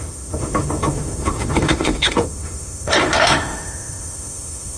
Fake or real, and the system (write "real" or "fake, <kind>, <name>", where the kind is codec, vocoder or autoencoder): fake, autoencoder, DAC-VAE